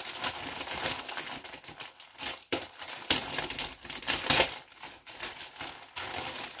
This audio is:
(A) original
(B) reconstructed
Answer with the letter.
A